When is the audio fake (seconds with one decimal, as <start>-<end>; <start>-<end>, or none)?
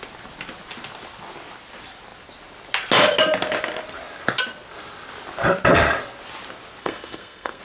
6.8-7.6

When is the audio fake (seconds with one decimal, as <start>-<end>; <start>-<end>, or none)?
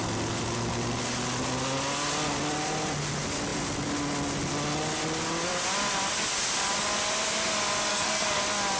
7.9-8.4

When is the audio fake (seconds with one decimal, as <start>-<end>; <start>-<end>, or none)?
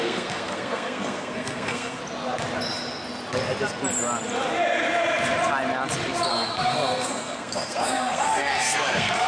0.0-2.0; 6.3-9.3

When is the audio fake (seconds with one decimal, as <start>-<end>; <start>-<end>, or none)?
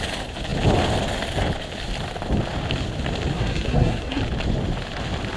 3.3-4.2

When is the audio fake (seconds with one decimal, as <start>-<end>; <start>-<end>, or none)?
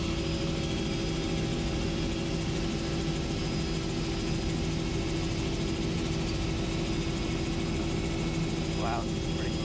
none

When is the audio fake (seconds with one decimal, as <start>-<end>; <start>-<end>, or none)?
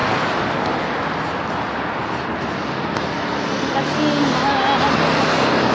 none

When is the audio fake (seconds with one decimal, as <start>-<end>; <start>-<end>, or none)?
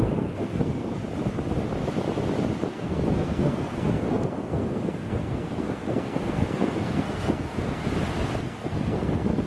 0.0-1.0; 2.7-7.8; 8.4-9.5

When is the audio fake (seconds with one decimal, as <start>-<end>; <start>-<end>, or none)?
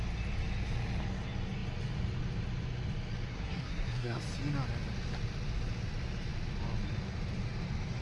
3.3-4.2